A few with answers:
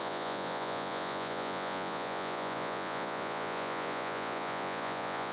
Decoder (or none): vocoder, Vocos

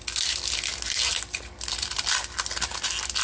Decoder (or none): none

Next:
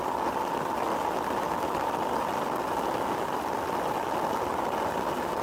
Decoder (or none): none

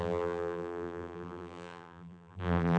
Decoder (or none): vocoder, BigVGAN v2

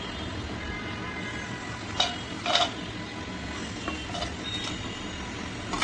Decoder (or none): none